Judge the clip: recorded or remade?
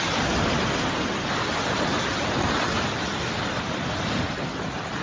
remade